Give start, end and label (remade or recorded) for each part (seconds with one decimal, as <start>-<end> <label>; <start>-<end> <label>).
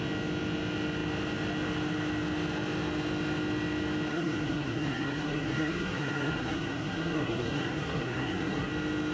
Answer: 0.0-4.1 recorded; 4.1-8.7 remade; 8.7-9.1 recorded